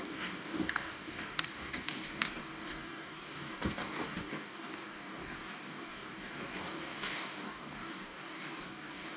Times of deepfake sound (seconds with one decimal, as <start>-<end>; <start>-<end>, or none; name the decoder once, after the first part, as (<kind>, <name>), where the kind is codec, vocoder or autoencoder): 0.0-9.2 (codec, DAC)